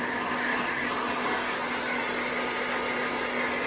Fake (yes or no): no